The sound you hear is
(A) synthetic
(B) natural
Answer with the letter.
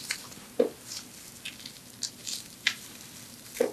B